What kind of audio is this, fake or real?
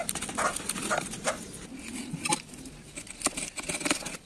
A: real